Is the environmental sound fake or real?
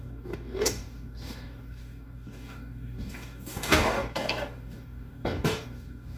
fake